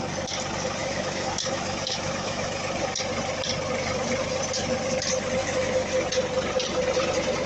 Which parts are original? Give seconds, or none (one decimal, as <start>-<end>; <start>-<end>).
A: 0.0-0.8; 2.6-5.4; 5.9-7.5